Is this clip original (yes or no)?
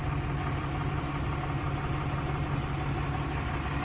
yes